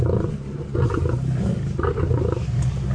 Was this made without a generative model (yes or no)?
yes